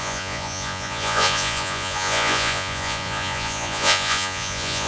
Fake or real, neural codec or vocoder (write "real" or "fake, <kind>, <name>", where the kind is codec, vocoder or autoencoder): fake, vocoder, Vocos